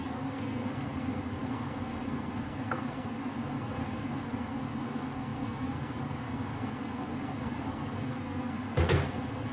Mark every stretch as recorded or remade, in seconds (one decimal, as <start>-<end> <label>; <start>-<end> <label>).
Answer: 0.0-9.5 remade